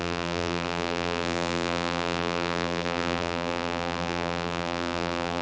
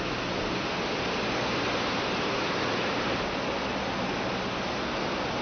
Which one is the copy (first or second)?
first